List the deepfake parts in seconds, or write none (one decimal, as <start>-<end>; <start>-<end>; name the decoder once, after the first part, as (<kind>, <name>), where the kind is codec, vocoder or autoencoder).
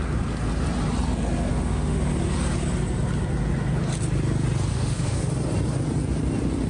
1.5-2.0 (autoencoder, DAC-VAE); 4.7-5.3